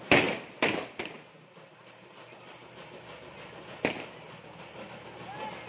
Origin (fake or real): real